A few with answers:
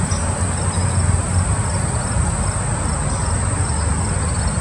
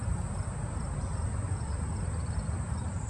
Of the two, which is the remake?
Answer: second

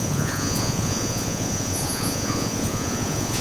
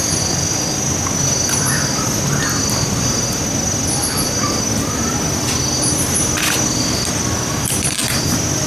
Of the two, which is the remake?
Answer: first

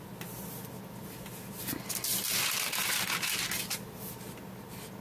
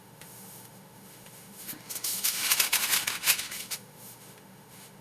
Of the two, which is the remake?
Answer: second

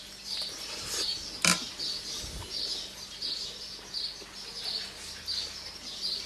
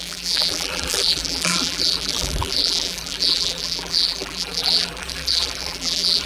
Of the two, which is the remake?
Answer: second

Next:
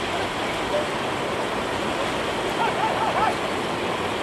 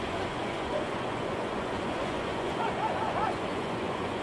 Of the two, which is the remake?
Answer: second